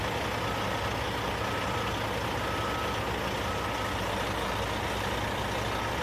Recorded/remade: recorded